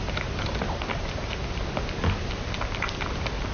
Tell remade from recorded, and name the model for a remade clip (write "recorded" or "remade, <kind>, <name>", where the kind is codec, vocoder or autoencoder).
recorded